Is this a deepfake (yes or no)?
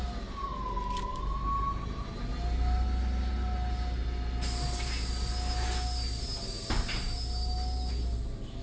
no